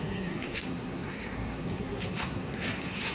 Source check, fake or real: fake